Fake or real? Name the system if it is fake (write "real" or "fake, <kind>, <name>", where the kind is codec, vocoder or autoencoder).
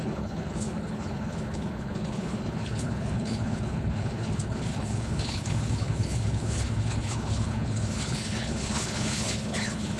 fake, codec, HILCodec